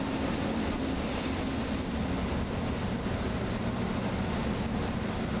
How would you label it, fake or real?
real